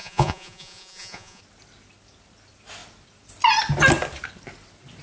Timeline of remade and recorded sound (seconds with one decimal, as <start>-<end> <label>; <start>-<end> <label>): 0.0-1.4 remade; 1.4-5.0 recorded